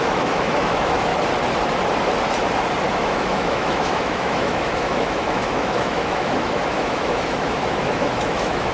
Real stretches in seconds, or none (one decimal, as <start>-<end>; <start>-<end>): 1.1-2.9